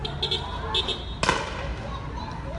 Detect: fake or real real